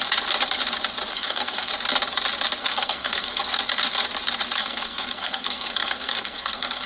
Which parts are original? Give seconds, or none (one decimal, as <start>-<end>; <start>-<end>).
0.0-1.1; 1.7-2.6; 3.4-4.6